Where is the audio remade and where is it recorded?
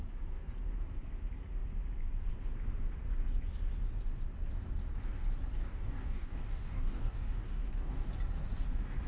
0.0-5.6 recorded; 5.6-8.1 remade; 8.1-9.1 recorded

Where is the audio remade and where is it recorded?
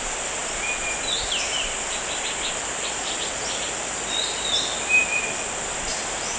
0.0-6.4 recorded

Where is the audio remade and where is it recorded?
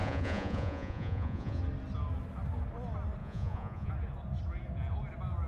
0.0-1.6 remade; 1.6-3.2 recorded; 3.2-3.9 remade; 3.9-5.5 recorded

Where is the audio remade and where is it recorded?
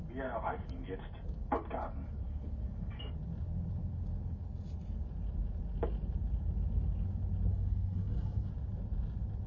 0.0-7.5 recorded; 7.5-8.5 remade; 8.5-9.5 recorded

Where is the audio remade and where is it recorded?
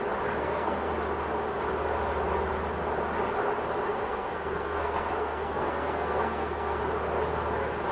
0.0-0.4 recorded; 0.4-0.9 remade; 0.9-3.9 recorded; 3.9-6.8 remade; 6.8-7.9 recorded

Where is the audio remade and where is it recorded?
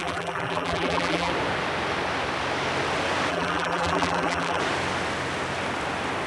0.0-1.3 remade; 1.3-3.3 recorded; 3.3-4.6 remade; 4.6-6.3 recorded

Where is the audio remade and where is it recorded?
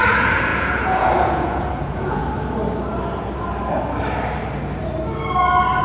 0.0-2.2 remade; 2.2-5.8 recorded